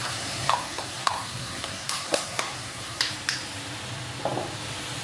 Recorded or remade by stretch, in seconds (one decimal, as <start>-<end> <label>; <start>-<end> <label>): 0.0-3.0 remade; 3.0-5.0 recorded